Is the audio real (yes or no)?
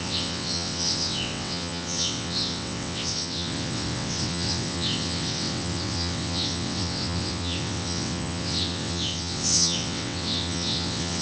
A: no